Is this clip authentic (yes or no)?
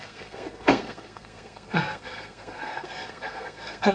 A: no